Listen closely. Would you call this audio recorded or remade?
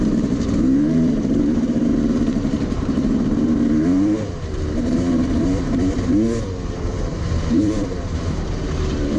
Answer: remade